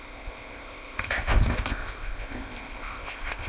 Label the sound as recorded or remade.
remade